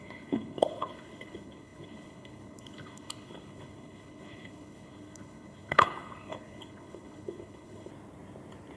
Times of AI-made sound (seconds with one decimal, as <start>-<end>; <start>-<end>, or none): 0.0-7.9